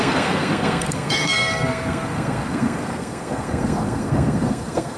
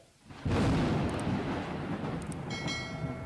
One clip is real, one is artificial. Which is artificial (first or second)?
first